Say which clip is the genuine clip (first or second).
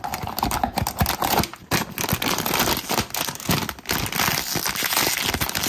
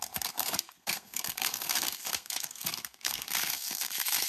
first